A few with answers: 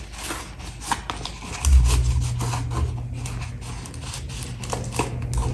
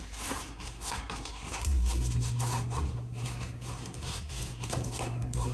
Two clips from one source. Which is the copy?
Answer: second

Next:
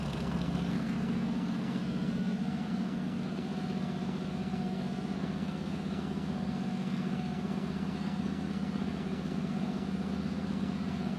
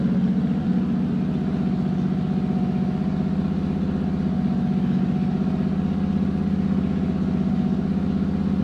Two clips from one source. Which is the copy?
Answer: first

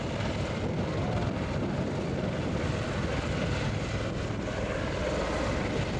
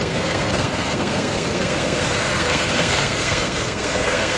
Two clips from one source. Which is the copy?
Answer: second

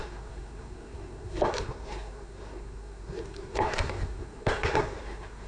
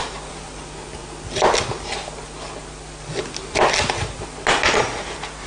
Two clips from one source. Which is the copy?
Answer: first